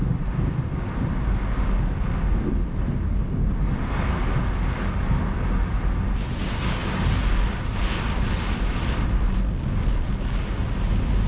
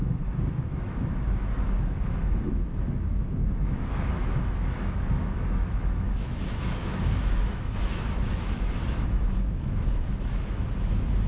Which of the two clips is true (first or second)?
first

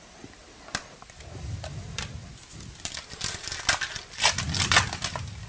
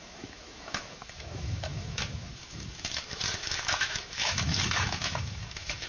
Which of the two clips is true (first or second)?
first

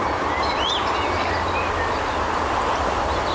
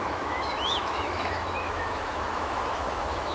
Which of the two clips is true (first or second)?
first